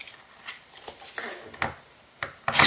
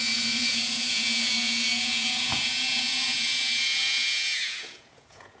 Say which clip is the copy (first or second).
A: second